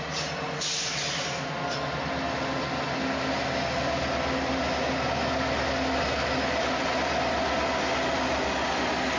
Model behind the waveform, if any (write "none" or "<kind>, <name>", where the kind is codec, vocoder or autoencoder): none